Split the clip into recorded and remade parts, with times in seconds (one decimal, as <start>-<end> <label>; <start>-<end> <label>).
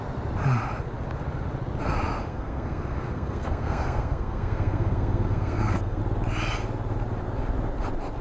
0.0-2.3 recorded; 2.3-6.0 remade; 6.0-8.2 recorded